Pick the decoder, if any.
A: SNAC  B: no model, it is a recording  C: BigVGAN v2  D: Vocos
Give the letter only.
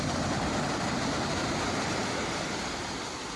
B